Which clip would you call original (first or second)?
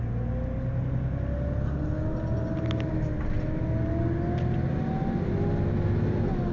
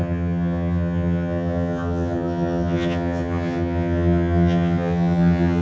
first